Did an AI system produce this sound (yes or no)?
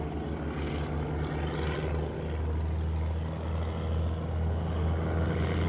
no